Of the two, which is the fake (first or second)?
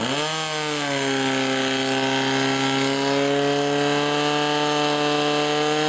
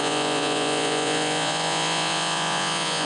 second